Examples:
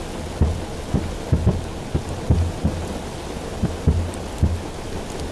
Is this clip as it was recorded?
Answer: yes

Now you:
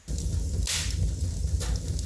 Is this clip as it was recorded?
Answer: yes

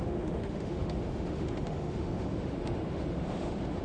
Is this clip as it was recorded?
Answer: no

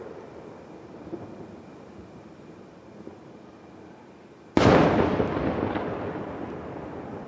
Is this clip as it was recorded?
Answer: yes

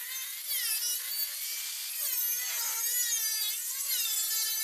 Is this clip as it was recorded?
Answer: yes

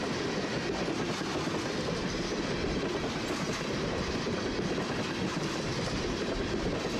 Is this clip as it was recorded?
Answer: yes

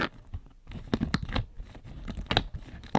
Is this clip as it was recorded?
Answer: yes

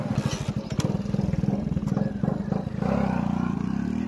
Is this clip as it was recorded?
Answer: yes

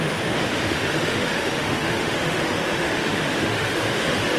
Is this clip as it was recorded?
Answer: no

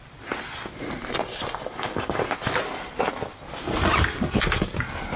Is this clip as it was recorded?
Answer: yes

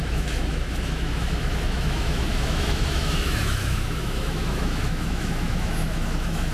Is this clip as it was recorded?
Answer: no